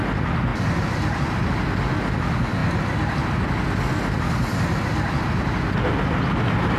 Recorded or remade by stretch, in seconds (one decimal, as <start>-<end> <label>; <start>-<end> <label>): 0.0-0.5 recorded; 0.5-1.5 remade; 1.5-6.8 recorded